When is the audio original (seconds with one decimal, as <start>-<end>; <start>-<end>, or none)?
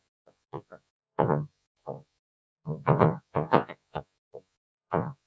none